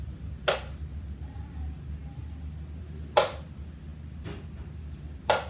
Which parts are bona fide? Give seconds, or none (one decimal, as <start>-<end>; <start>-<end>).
0.0-5.5